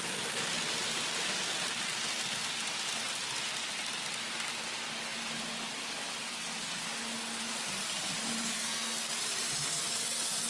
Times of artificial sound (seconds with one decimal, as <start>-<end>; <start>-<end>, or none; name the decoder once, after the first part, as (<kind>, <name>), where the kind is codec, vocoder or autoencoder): 8.5-9.1 (codec, SNAC)